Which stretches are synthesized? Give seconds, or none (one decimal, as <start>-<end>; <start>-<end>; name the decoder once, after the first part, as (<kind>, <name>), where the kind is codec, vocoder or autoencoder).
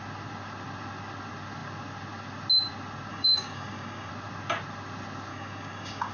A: 3.1-4.1 (codec, DAC); 5.3-6.1